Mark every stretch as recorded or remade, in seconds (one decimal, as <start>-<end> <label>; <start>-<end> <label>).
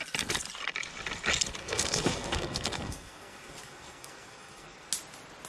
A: 0.0-1.6 recorded; 1.6-4.9 remade; 4.9-5.5 recorded